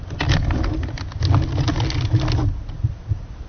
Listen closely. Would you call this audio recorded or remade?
recorded